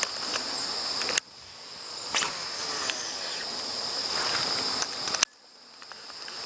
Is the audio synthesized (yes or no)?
no